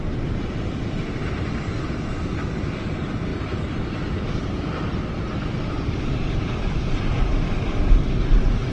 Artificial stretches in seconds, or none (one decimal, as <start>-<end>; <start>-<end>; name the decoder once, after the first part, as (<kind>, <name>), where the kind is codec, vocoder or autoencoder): 3.3-6.3 (vocoder, BigVGAN v2)